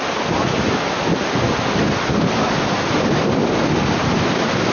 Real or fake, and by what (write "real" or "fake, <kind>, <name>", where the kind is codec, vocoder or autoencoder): real